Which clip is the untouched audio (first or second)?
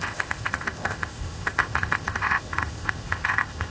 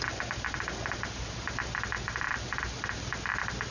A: second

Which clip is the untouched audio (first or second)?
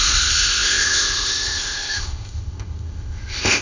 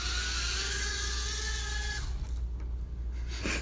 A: second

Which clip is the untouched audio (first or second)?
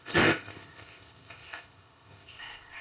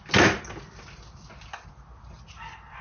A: second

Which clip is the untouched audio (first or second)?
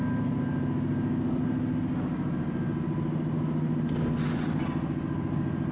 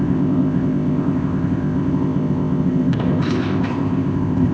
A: first